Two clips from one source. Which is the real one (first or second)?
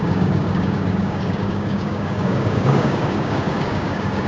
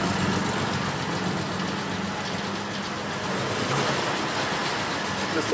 second